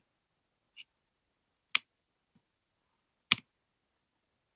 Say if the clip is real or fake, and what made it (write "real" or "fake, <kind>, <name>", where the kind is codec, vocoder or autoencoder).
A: real